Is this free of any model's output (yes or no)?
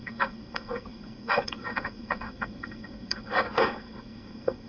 no